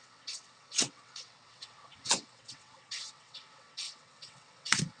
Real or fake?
fake